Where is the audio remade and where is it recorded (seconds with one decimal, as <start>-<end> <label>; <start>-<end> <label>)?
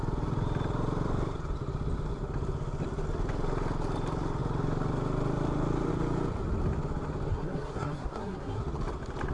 0.0-7.3 recorded; 7.3-8.6 remade; 8.6-9.3 recorded